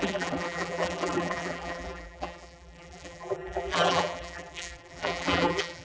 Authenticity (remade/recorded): remade